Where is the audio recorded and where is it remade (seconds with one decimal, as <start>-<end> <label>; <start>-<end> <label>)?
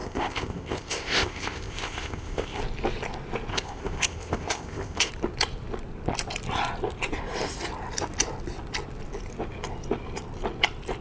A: 0.0-2.6 remade; 2.6-3.5 recorded; 3.5-5.1 remade; 5.1-11.0 recorded